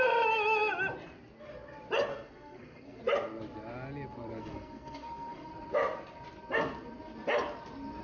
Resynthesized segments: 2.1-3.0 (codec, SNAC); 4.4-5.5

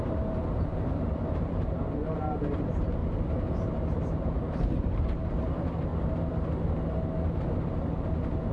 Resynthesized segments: 0.0-0.7 (vocoder, BigVGAN v2); 1.4-3.0; 3.9-5.9

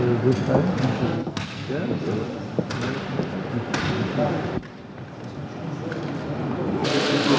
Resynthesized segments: 0.9-1.7 (codec, SNAC)

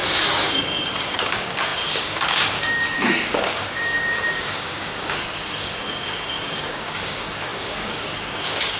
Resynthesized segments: 0.0-8.8 (codec, DAC)

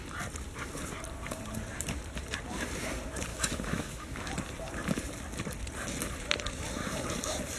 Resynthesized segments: 3.3-4.3 (autoencoder, DAC-VAE)

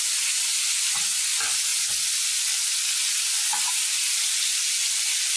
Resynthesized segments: none

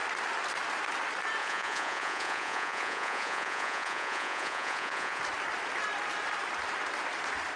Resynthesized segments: 1.4-5.2 (vocoder, Vocos)